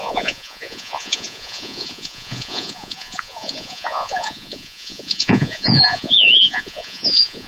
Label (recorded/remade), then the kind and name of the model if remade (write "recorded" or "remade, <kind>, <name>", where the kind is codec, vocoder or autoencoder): remade, vocoder, Vocos